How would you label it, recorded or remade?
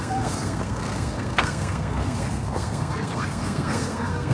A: remade